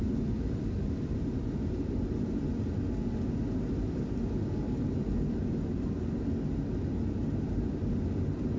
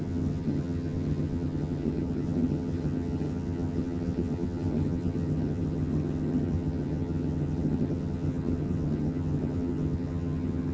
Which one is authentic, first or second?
first